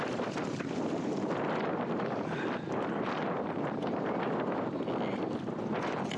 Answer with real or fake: real